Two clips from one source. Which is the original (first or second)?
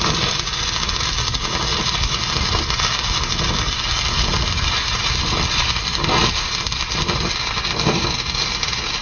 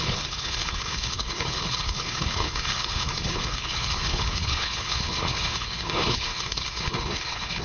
first